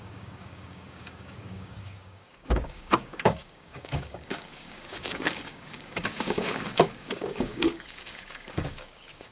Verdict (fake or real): fake